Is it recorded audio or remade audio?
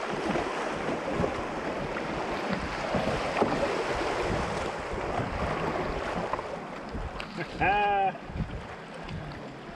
recorded